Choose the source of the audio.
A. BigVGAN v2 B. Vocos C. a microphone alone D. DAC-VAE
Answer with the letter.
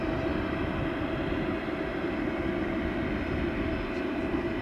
C